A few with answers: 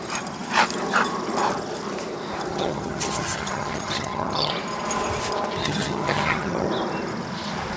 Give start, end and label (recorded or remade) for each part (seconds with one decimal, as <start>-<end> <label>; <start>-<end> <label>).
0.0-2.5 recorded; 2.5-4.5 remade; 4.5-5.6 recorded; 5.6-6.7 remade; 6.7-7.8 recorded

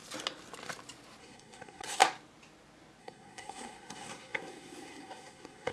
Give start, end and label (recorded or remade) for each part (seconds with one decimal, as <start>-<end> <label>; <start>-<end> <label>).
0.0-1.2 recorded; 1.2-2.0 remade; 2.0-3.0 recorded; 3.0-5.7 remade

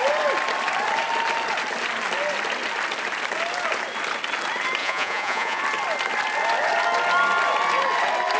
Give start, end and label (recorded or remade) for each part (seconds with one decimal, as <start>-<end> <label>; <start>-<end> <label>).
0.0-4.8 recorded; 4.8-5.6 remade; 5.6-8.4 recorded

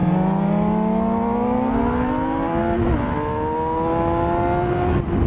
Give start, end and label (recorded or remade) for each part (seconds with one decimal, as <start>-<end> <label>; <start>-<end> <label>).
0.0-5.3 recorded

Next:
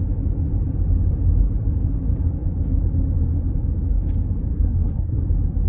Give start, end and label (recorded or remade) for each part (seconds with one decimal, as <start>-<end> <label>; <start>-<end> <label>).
0.0-4.5 recorded; 4.5-5.2 remade; 5.2-5.7 recorded

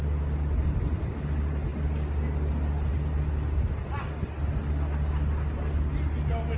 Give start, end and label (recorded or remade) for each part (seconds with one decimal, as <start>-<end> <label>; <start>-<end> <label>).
0.0-6.6 recorded